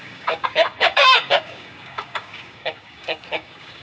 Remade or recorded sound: remade